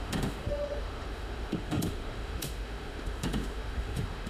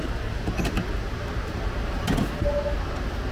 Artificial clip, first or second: first